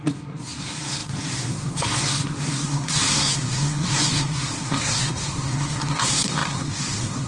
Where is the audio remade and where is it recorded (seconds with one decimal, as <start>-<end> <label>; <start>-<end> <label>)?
0.0-7.3 remade